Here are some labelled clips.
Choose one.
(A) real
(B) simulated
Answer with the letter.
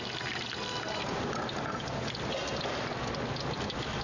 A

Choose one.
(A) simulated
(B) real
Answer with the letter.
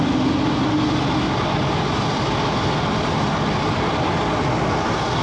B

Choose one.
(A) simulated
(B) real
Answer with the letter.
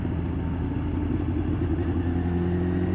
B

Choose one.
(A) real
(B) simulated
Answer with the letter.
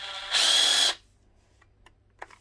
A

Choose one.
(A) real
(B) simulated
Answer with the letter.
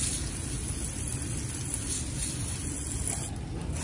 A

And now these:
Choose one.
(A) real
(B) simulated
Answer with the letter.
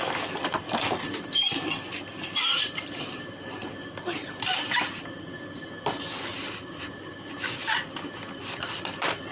A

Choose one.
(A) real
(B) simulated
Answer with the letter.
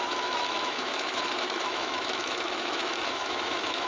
B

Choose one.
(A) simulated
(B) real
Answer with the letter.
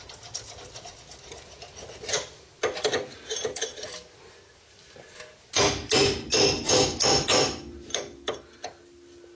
B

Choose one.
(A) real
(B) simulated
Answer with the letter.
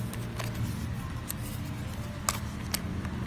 A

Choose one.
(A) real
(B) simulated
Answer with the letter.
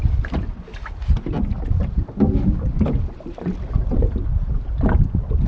A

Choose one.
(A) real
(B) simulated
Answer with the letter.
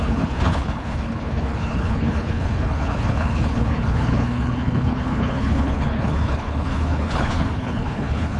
B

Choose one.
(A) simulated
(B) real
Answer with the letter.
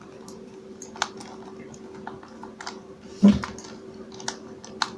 B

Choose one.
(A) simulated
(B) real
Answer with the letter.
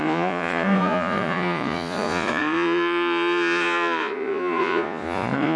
A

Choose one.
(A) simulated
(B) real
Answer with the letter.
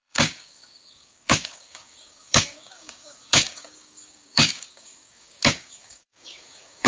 A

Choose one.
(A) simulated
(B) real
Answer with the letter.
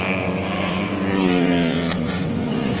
A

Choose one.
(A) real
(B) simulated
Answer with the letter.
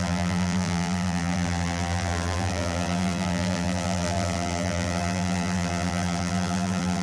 B